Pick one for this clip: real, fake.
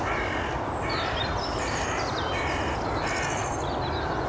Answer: real